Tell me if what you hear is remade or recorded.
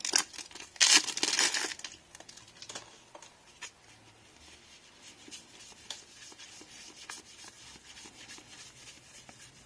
recorded